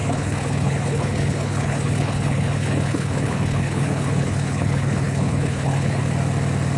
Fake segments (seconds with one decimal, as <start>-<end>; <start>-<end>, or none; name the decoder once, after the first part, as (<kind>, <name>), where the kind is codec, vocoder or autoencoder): 0.0-6.0 (codec, HILCodec)